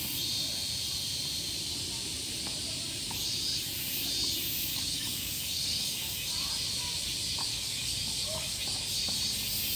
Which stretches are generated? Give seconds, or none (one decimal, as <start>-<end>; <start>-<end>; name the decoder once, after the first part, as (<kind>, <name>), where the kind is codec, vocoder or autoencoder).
4.7-6.3 (codec, DAC); 7.5-8.6